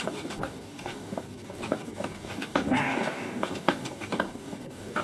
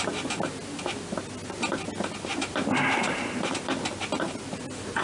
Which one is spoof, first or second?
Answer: first